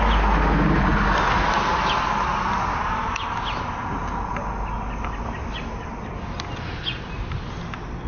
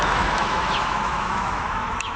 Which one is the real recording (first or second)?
first